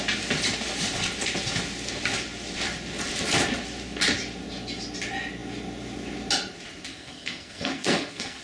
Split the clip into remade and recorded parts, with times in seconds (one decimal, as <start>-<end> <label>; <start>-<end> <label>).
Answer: 0.0-6.9 recorded; 6.9-8.4 remade